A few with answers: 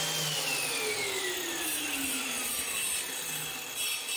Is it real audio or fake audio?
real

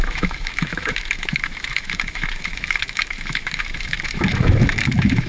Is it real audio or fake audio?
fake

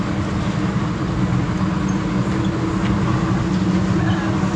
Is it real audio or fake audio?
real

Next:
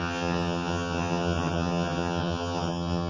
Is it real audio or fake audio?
fake